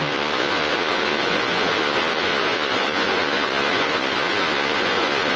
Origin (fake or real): fake